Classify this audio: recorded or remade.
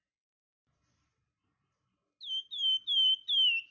recorded